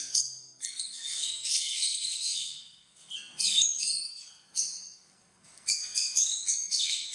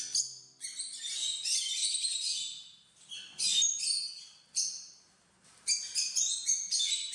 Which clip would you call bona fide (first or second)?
second